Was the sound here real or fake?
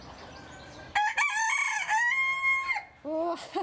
real